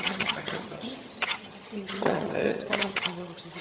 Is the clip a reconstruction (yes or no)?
yes